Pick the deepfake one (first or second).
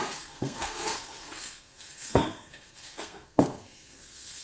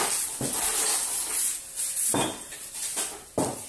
first